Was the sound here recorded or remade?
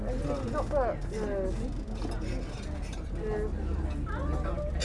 recorded